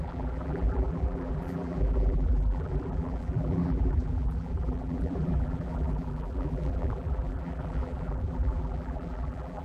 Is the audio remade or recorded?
remade